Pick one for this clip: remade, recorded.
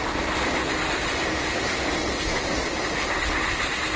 recorded